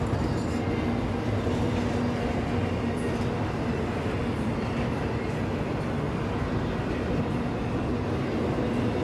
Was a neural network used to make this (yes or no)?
no